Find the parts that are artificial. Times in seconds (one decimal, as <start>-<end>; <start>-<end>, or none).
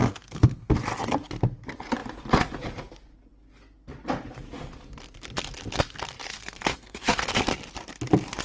0.0-0.7; 6.3-7.3